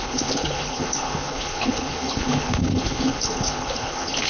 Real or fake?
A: fake